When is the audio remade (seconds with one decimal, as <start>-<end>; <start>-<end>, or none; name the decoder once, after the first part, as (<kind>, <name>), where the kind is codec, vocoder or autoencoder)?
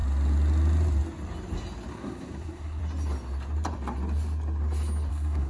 1.9-2.8 (codec, SNAC); 5.1-5.5